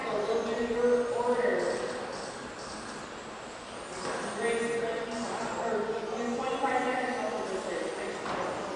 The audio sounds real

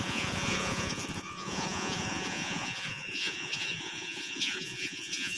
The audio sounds fake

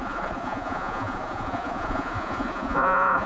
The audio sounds fake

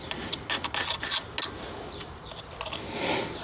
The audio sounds real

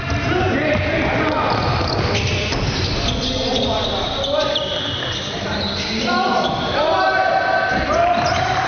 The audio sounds real